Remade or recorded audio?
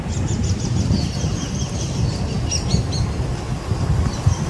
recorded